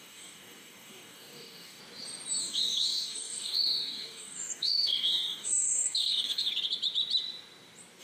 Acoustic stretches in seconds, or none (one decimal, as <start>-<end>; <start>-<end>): 1.8-2.4; 6.5-8.0